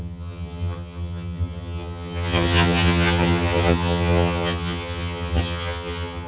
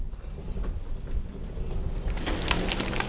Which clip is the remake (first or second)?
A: first